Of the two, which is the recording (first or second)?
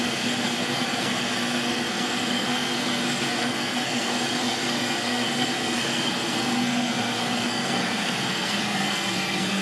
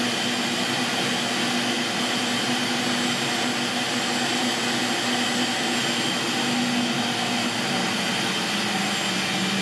second